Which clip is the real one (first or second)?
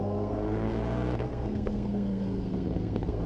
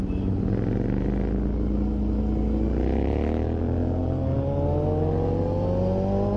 second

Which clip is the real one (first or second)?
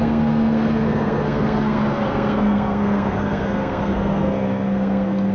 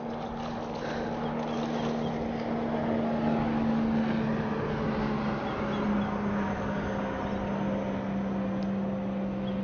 second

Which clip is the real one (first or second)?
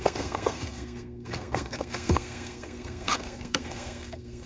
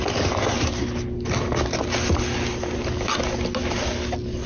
second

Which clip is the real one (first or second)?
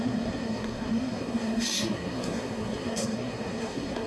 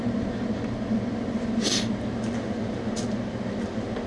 second